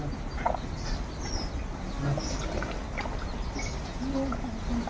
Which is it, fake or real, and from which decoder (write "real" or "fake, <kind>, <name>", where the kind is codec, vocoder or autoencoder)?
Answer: real